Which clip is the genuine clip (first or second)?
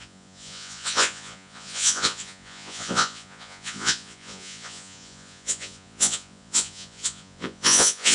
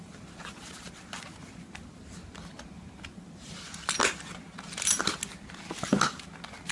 second